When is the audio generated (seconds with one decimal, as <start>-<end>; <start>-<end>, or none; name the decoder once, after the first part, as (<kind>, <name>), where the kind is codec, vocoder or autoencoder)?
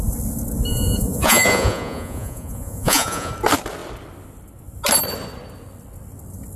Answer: 0.7-3.3 (vocoder, Vocos)